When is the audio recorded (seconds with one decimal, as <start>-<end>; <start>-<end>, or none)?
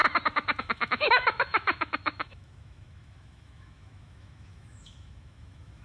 0.0-0.6